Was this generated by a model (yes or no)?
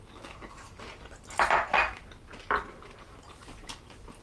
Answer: no